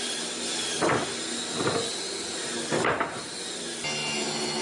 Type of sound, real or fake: real